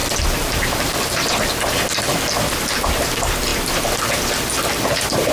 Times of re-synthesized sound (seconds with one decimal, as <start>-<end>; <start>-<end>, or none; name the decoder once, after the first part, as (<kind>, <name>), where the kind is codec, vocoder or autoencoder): 0.0-1.6 (vocoder, BigVGAN v2)